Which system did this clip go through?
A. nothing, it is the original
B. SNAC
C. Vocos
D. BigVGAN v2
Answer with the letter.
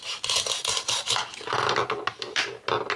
A